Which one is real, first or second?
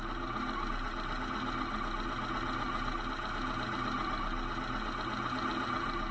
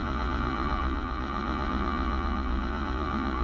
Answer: first